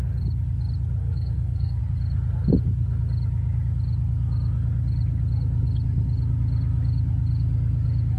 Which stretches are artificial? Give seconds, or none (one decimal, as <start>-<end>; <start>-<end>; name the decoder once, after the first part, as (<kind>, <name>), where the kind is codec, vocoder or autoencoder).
1.0-1.8 (codec, SNAC)